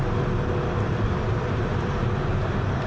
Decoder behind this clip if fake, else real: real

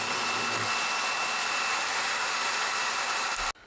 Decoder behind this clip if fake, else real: real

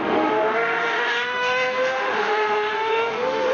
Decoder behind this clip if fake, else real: fake, autoencoder, DAC-VAE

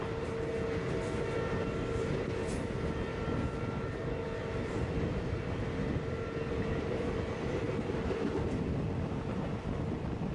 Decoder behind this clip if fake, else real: real